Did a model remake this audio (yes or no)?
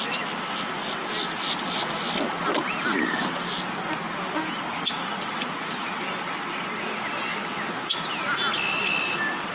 no